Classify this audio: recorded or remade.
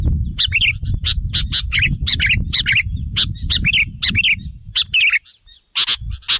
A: recorded